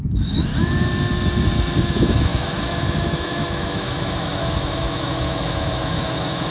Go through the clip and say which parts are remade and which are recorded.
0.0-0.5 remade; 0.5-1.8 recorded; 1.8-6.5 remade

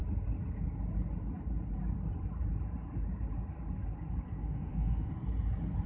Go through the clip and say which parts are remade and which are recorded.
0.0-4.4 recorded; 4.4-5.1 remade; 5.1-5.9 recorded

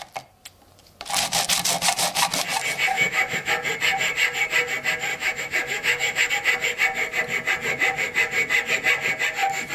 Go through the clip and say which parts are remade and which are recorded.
0.0-2.9 recorded; 2.9-3.5 remade; 3.5-5.1 recorded; 5.1-6.3 remade; 6.3-9.7 recorded

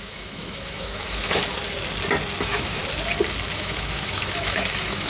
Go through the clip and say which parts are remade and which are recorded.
0.0-1.4 remade; 1.4-2.4 recorded; 2.4-2.8 remade; 2.8-3.5 recorded; 3.5-5.1 remade